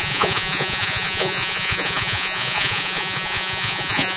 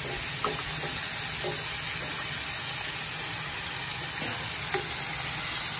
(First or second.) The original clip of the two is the second